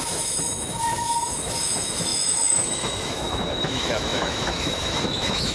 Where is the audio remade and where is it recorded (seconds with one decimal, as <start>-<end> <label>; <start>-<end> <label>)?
0.0-5.5 remade